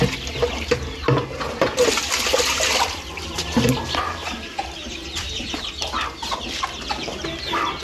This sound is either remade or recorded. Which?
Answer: recorded